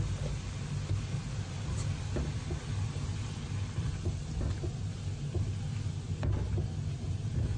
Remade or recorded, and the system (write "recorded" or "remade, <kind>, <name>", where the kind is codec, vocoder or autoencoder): recorded